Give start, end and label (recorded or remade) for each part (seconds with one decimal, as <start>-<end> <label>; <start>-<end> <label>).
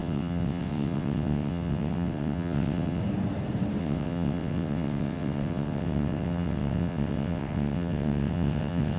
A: 0.0-3.0 remade; 3.0-3.8 recorded; 3.8-9.0 remade